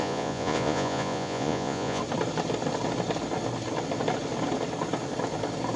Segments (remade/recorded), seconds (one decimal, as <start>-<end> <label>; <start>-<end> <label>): 0.0-2.0 remade; 2.0-5.8 recorded